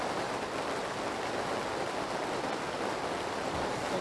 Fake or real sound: real